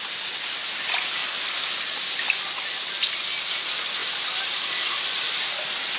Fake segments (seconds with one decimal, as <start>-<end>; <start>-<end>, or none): none